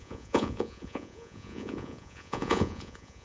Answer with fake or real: fake